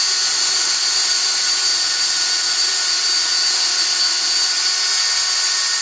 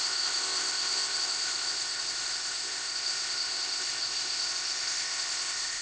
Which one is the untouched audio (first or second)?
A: first